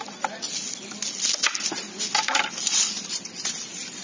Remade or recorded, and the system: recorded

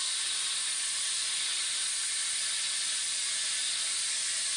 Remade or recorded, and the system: recorded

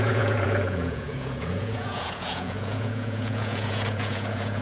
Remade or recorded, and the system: remade, vocoder, Vocos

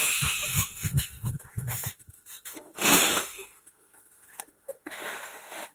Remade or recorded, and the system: remade, autoencoder, DAC-VAE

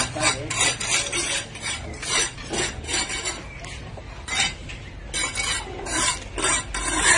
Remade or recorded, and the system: recorded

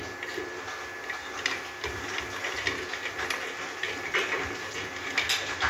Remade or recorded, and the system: recorded